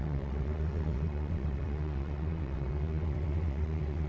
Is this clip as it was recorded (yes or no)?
no